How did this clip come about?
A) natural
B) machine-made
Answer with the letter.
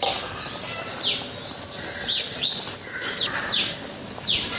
A